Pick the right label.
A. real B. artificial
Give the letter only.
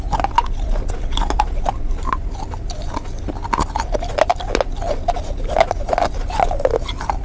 A